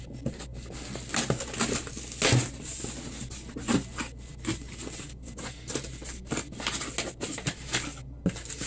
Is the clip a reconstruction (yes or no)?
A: no